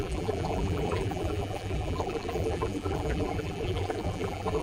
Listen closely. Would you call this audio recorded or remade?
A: remade